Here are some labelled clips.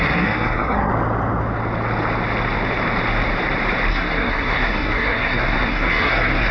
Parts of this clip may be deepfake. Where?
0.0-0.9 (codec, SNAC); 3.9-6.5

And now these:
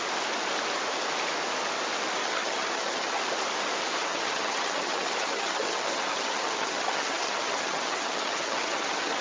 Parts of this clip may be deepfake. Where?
2.2-3.2 (vocoder, HiFi-GAN); 4.0-9.2

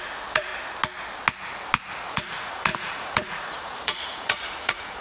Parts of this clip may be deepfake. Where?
0.0-0.5 (vocoder, Vocos); 2.1-5.0